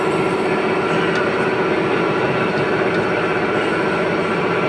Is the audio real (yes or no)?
yes